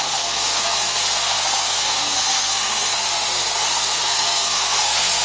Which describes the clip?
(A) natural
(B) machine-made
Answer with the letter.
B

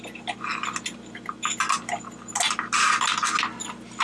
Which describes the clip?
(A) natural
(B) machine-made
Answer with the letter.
A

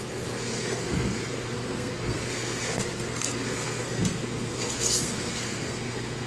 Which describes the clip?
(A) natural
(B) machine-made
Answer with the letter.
B